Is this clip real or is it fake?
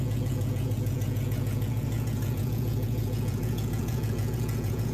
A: fake